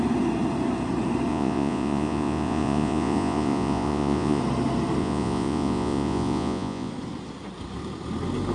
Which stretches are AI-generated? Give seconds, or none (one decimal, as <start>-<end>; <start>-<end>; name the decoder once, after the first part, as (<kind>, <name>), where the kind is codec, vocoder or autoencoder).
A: 1.3-4.4 (vocoder, Vocos); 5.0-6.9